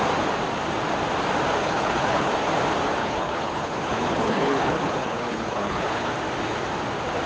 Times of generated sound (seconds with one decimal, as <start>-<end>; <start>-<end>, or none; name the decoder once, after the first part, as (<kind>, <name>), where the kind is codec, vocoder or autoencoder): 1.6-2.3 (codec, HILCodec); 3.0-6.1